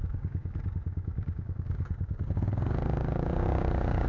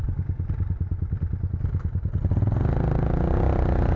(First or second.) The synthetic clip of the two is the first